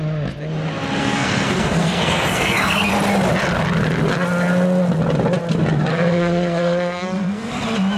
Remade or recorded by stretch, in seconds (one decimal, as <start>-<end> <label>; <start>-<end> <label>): 0.0-1.0 recorded; 1.0-2.9 remade; 2.9-5.9 recorded; 5.9-7.5 remade; 7.5-8.0 recorded